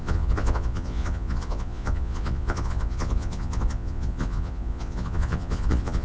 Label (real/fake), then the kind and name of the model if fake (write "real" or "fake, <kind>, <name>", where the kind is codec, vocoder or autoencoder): fake, vocoder, Vocos